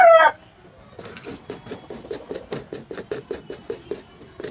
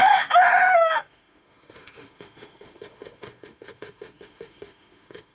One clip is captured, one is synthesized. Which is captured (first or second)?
first